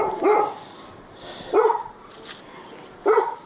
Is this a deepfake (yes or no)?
no